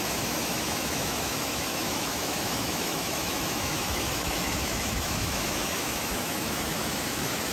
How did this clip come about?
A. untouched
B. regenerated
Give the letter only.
B